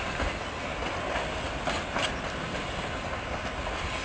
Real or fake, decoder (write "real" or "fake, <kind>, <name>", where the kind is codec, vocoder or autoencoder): real